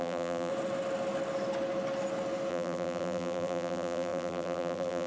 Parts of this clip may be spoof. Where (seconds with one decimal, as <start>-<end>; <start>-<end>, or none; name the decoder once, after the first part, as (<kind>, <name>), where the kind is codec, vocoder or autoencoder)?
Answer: 0.0-0.5 (vocoder, BigVGAN v2); 2.5-5.1